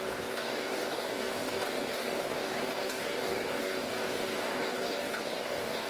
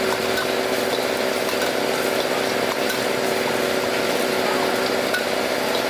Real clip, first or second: second